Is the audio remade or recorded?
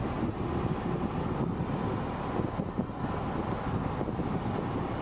recorded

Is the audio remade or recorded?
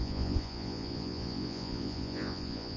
remade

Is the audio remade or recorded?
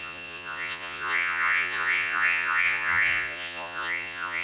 remade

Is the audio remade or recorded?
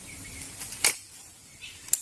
recorded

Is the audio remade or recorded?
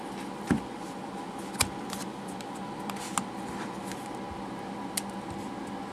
recorded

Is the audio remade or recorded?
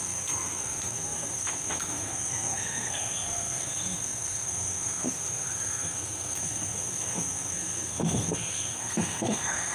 remade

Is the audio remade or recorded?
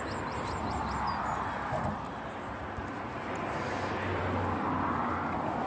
recorded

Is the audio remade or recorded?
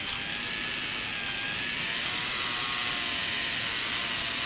recorded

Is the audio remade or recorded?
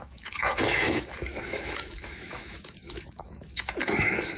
remade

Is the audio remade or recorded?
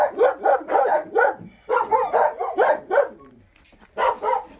recorded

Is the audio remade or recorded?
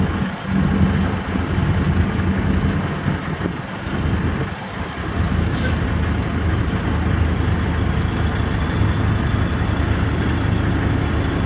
recorded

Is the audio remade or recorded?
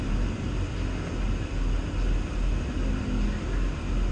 recorded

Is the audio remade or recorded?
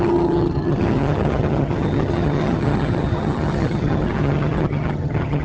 remade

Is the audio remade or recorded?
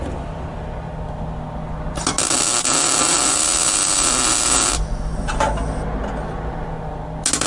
recorded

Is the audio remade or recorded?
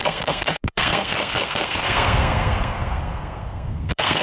remade